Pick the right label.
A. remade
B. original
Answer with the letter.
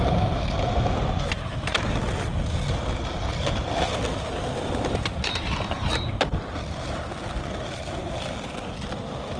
B